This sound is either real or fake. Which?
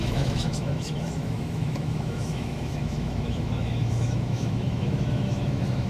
fake